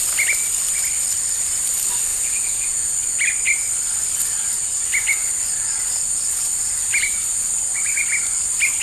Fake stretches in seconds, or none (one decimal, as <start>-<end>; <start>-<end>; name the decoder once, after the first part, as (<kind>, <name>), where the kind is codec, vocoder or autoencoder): 2.1-2.9 (vocoder, Vocos)